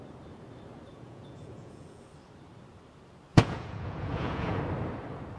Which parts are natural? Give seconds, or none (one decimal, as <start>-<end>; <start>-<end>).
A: 0.0-0.9; 2.0-3.3; 4.6-5.4